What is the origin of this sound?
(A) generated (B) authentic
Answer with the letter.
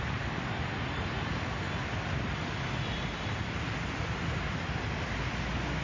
B